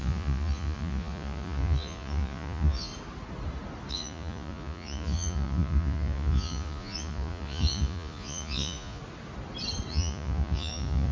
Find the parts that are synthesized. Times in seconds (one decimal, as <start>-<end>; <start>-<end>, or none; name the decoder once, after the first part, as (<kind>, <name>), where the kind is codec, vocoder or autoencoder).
0.0-2.9 (vocoder, Vocos); 3.9-9.0; 9.9-11.1